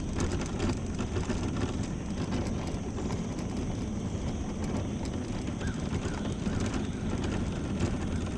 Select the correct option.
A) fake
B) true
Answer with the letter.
B